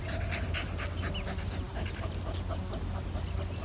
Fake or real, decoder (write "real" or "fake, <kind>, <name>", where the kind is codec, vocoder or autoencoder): real